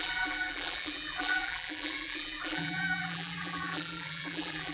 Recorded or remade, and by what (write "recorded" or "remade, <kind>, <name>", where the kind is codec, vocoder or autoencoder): remade, vocoder, BigVGAN v2